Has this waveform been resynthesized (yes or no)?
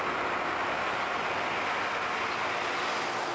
no